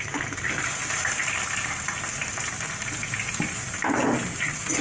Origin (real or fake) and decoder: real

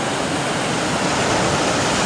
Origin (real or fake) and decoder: real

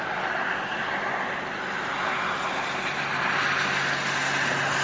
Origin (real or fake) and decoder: real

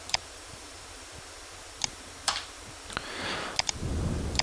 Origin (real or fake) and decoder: real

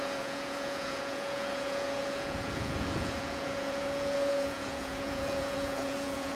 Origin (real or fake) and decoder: fake, vocoder, Vocos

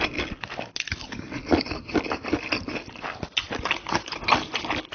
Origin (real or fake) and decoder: real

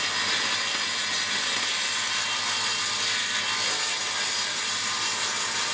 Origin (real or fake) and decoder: real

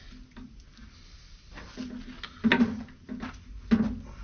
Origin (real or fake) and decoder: real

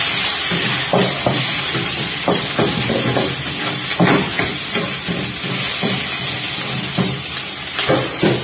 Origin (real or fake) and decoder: real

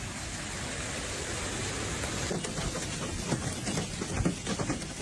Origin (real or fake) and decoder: real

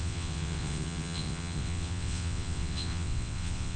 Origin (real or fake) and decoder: fake, vocoder, WaveNeXt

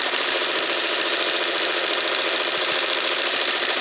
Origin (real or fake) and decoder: fake, vocoder, BigVGAN v2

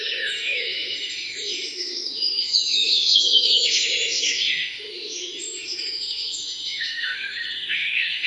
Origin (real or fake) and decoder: fake, autoencoder, DAC-VAE